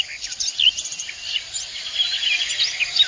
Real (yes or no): yes